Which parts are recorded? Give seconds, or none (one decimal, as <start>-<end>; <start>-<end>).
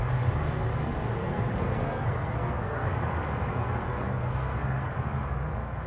0.0-1.2; 2.9-3.5; 4.9-5.9